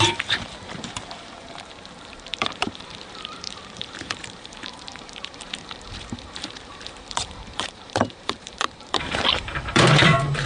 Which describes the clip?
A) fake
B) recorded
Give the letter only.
A